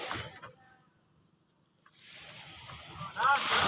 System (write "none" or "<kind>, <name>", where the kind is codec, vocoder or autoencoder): none